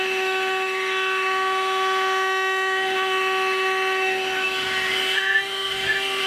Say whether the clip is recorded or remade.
remade